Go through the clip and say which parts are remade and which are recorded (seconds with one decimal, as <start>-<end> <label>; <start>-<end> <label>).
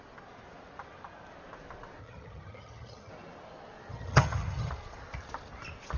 0.0-2.0 recorded; 2.0-3.1 remade; 3.1-3.9 recorded; 3.9-4.7 remade; 4.7-6.0 recorded